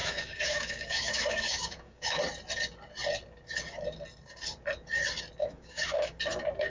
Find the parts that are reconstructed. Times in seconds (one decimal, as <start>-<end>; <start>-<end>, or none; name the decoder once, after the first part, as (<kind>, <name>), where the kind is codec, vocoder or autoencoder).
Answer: 0.0-2.2 (autoencoder, DAC-VAE); 5.4-6.2